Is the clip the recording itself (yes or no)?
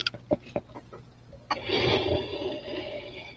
yes